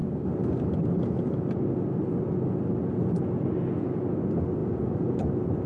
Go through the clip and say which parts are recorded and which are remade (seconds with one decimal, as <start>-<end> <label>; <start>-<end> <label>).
0.0-4.6 recorded; 4.6-5.2 remade; 5.2-5.7 recorded